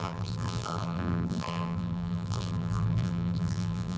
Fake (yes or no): yes